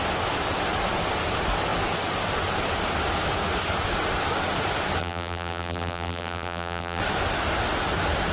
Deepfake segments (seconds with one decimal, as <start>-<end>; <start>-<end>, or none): 5.0-7.0